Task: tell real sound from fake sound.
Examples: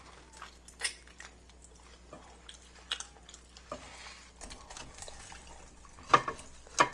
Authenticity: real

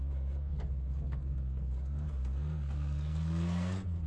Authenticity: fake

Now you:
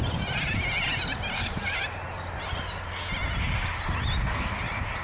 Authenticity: real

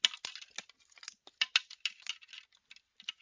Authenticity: real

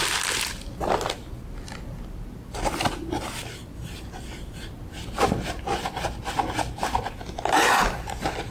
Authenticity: real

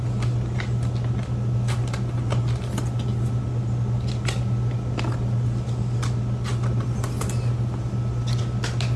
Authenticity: real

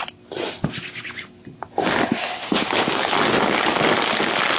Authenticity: real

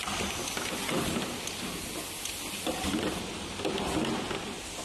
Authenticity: real